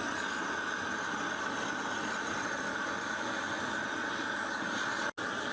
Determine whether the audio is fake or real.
real